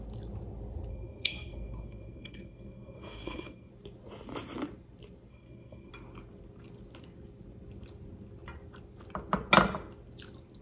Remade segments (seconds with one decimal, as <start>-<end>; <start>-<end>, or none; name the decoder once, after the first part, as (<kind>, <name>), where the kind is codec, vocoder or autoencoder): 0.9-3.7 (codec, SNAC); 5.3-5.9

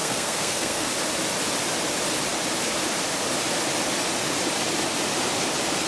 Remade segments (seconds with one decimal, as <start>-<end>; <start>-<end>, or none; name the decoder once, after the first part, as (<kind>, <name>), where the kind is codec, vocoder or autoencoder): 0.0-0.9 (codec, SNAC)

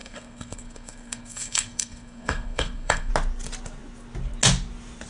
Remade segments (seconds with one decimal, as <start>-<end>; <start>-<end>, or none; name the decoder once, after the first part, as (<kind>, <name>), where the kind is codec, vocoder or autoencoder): 0.0-3.1 (codec, SNAC)